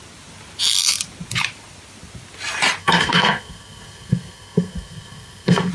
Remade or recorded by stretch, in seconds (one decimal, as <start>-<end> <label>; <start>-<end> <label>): 0.0-2.8 recorded; 2.8-5.7 remade